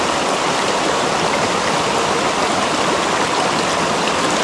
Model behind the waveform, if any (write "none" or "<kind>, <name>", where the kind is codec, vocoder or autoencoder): none